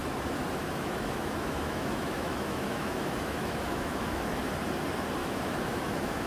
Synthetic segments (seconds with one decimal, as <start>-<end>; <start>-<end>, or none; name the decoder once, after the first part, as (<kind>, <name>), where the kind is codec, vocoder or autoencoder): 0.6-4.4 (autoencoder, DAC-VAE); 5.2-6.3